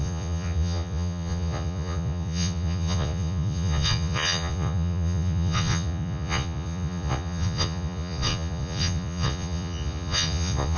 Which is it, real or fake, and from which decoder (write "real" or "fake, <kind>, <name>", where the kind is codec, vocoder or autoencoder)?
fake, vocoder, Vocos